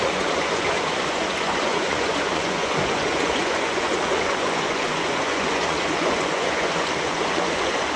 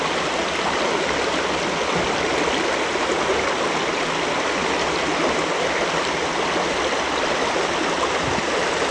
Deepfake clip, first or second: first